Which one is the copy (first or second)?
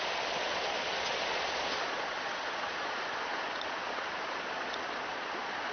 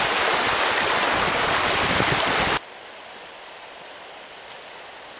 first